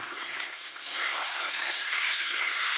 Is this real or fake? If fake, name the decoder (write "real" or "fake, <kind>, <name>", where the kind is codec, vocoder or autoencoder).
fake, codec, SNAC